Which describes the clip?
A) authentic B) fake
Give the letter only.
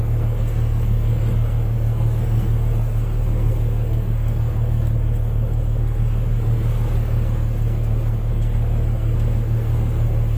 B